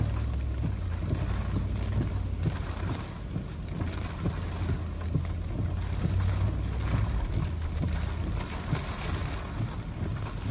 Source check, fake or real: real